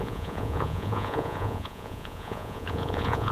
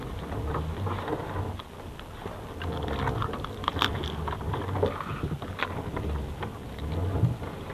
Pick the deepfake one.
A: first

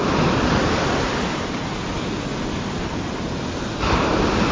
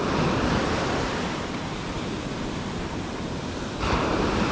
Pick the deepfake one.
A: second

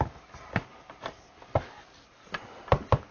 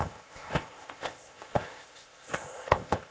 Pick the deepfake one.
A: second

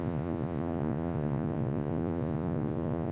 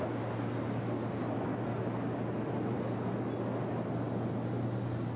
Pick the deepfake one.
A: first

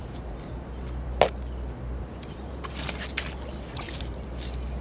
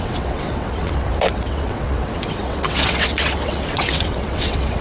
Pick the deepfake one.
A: second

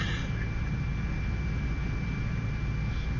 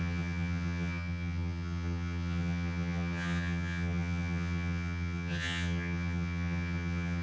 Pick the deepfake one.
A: second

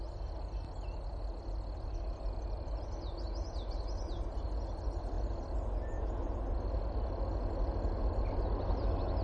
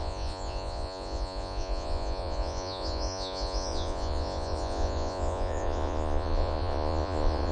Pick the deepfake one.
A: second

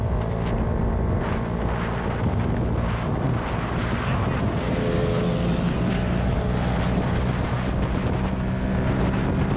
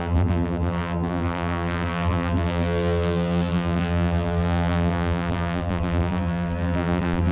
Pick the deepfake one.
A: second